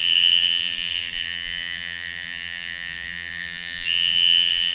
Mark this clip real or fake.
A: fake